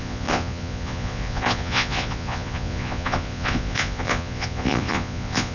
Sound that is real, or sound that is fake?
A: fake